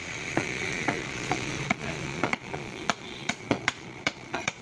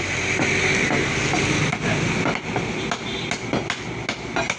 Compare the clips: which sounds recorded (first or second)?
second